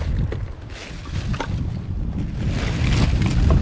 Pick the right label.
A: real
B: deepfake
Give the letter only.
A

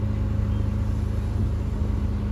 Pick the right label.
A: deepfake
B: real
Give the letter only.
B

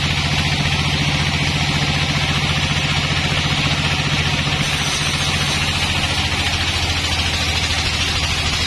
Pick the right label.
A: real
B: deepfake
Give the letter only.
A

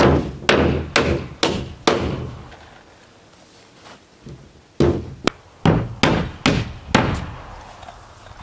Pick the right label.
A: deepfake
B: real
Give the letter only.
B